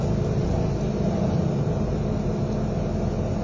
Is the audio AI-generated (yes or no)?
no